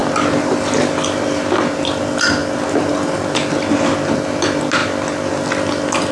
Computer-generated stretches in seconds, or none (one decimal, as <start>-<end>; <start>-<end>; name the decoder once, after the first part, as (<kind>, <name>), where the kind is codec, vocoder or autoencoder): none